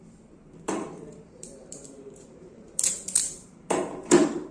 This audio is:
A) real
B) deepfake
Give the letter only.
B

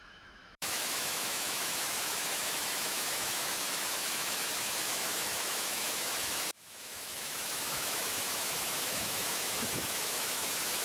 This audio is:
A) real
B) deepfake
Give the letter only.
B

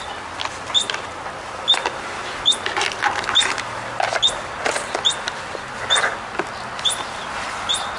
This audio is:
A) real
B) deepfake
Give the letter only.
A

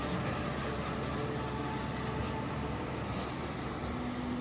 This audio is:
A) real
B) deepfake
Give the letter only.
A